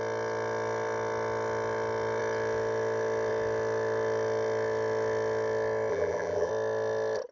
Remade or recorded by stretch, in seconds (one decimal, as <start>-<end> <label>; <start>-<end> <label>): 0.0-5.9 recorded; 5.9-6.5 remade; 6.5-7.3 recorded